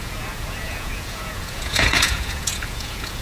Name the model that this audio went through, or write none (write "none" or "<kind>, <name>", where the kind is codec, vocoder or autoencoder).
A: vocoder, Vocos